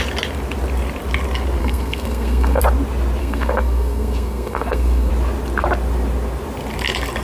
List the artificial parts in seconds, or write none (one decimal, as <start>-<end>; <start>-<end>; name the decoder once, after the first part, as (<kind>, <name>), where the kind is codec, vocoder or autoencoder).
1.6-2.6 (codec, SNAC); 3.2-5.1